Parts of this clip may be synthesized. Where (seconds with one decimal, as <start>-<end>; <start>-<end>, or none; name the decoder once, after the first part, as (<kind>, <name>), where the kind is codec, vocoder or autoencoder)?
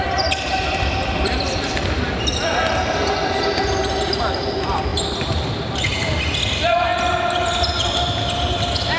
0.0-3.0 (vocoder, BigVGAN v2); 4.2-6.9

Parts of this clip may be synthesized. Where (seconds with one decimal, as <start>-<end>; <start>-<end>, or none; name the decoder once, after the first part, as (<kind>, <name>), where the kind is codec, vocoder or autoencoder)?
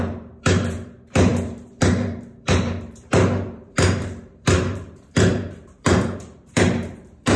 0.0-7.4 (vocoder, BigVGAN v2)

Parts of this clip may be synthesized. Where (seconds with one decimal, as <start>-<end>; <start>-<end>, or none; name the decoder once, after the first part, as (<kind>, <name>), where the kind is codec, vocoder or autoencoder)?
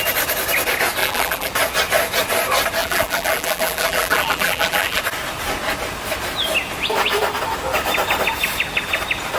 1.0-1.5 (vocoder, BigVGAN v2); 2.8-5.0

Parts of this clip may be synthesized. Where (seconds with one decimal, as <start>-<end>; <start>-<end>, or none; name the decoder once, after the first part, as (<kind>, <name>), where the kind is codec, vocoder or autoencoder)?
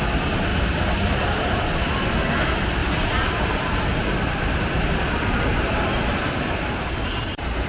0.5-2.1 (vocoder, BigVGAN v2); 2.8-6.3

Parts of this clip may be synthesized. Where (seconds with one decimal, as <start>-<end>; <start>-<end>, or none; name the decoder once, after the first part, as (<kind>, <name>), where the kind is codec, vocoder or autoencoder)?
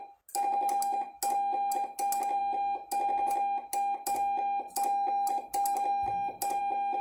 none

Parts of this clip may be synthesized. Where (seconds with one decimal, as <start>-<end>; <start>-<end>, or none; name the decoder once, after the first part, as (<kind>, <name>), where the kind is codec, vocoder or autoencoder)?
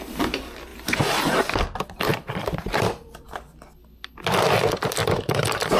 0.7-1.2 (vocoder, BigVGAN v2); 2.1-3.3; 5.0-5.8